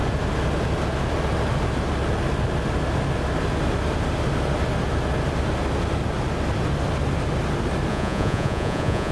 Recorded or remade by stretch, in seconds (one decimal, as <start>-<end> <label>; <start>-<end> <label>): 0.0-7.9 recorded; 7.9-9.1 remade

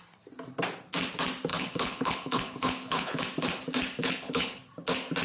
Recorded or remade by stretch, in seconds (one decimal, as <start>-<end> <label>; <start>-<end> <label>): 0.0-1.5 recorded; 1.5-3.2 remade; 3.2-4.0 recorded; 4.0-4.6 remade; 4.6-5.2 recorded

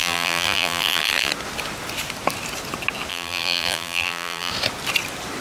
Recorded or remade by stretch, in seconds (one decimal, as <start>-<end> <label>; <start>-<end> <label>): 0.0-1.3 remade; 1.3-3.1 recorded; 3.1-4.5 remade; 4.5-5.4 recorded

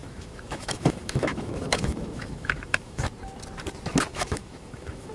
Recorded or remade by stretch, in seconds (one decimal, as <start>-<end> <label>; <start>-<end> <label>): 0.0-3.1 remade; 3.1-4.1 recorded; 4.1-5.1 remade

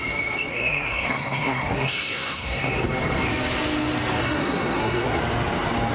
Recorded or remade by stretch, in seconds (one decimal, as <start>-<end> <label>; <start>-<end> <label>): 0.0-0.5 recorded; 0.5-2.7 remade; 2.7-4.2 recorded; 4.2-5.2 remade; 5.2-5.9 recorded

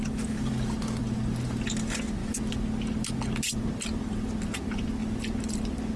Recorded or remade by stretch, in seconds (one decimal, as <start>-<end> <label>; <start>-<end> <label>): 0.0-6.0 recorded

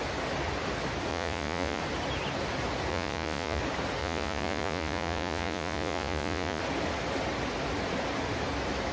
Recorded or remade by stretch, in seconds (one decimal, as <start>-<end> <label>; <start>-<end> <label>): 0.0-1.1 recorded; 1.1-1.8 remade; 1.8-2.9 recorded; 2.9-3.6 remade; 3.6-4.0 recorded; 4.0-6.6 remade; 6.6-8.9 recorded